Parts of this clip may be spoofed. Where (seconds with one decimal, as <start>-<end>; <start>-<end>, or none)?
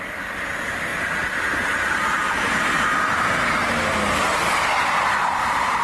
none